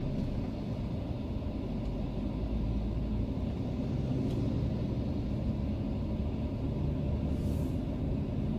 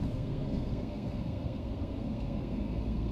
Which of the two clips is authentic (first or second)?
first